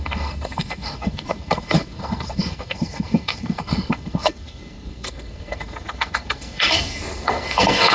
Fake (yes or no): yes